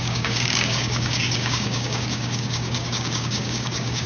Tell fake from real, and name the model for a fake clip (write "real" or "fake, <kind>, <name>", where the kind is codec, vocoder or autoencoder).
fake, codec, DAC